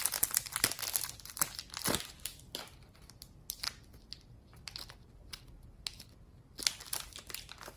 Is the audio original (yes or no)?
yes